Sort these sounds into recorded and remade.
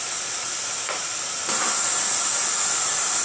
recorded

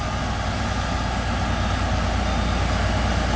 recorded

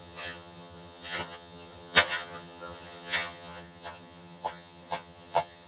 remade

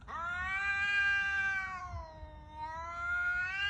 recorded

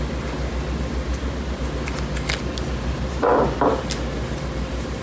recorded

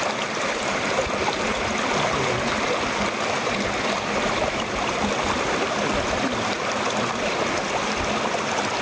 remade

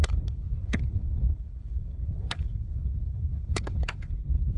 remade